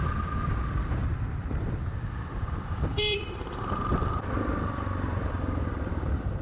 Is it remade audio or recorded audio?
remade